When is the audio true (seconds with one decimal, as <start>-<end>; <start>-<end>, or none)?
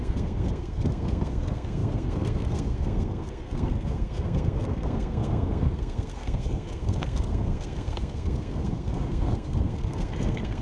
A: none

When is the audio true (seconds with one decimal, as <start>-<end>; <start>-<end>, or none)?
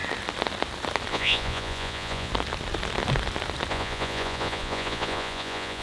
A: 0.0-1.1; 2.3-3.7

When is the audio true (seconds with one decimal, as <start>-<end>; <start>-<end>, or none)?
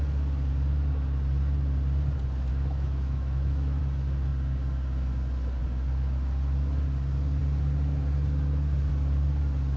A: 0.0-2.5; 3.8-9.8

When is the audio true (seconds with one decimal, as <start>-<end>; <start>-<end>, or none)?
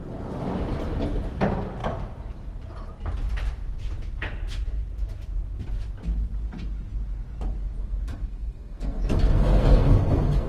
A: 0.0-7.8